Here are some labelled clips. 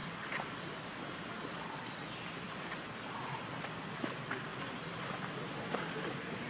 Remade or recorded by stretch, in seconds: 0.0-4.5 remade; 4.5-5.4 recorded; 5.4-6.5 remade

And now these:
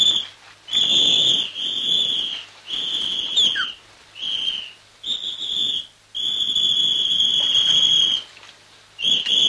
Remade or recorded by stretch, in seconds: 0.0-9.5 recorded

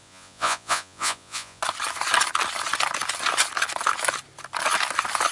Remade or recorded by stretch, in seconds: 0.0-1.6 remade; 1.6-5.3 recorded

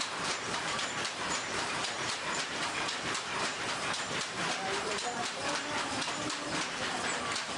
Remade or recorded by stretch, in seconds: 0.0-7.6 remade